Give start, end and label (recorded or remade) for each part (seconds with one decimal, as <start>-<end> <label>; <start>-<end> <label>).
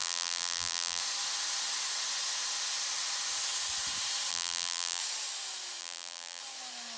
0.0-1.0 remade; 1.0-4.3 recorded; 4.3-5.0 remade; 5.0-5.8 recorded; 5.8-6.4 remade; 6.4-7.0 recorded